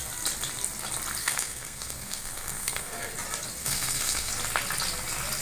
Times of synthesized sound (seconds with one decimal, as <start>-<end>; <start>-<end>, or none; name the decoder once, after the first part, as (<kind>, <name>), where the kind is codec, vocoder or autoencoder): 1.2-3.1 (codec, SNAC); 3.6-4.3